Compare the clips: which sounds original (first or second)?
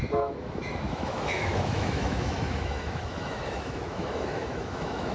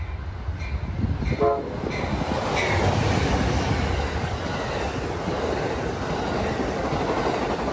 second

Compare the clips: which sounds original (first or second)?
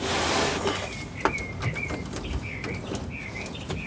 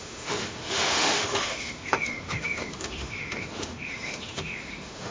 first